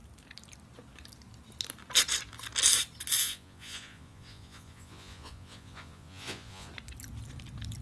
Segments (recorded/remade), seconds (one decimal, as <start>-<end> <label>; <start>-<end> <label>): 0.0-3.2 recorded; 3.2-6.7 remade; 6.7-7.8 recorded